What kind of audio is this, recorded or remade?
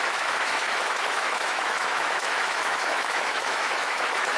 remade